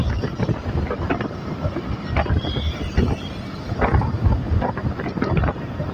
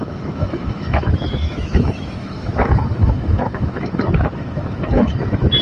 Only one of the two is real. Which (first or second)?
first